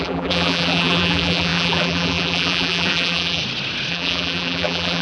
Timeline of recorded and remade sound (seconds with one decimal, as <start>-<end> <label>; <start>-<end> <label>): 0.0-3.4 remade; 3.4-3.9 recorded; 3.9-5.0 remade